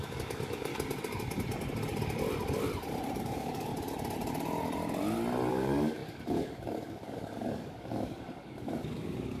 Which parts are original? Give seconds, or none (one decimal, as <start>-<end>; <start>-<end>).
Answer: 0.7-3.2; 3.7-5.5